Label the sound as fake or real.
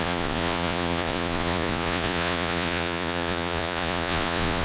fake